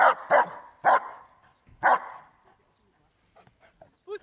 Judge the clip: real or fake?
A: real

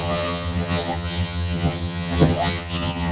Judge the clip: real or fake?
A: fake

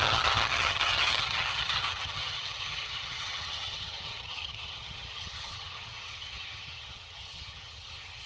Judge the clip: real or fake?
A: fake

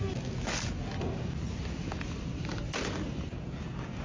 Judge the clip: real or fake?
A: real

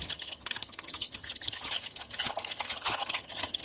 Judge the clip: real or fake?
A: fake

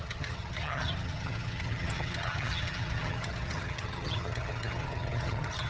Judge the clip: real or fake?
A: fake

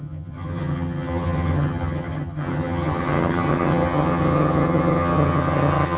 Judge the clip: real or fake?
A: fake